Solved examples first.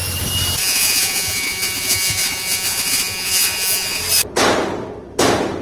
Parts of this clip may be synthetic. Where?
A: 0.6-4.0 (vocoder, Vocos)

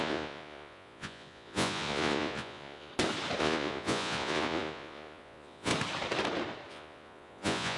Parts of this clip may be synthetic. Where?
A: 0.0-2.9 (vocoder, Vocos); 3.4-5.7; 6.7-7.8

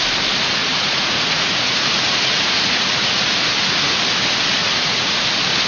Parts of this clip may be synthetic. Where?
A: 0.6-4.0 (vocoder, Vocos); 4.6-5.2

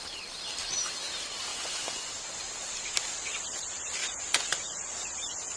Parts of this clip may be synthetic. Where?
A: 1.5-2.1 (vocoder, Vocos); 4.0-4.9

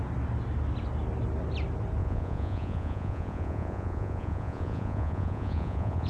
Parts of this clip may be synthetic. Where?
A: 2.0-6.1 (vocoder, Vocos)

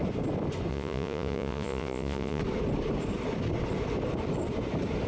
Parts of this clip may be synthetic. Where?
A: 0.7-2.4 (vocoder, Vocos)

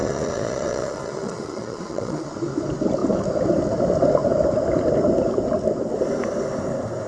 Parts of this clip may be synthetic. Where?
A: 0.0-2.3 (vocoder, Vocos)